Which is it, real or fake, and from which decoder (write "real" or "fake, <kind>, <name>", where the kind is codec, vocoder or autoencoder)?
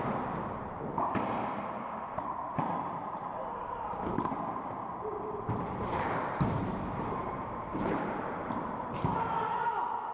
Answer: fake, vocoder, BigVGAN v2